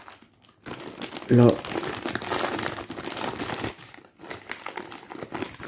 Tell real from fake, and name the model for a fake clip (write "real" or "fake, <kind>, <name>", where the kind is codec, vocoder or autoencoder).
real